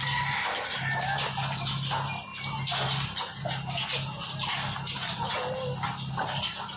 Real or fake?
real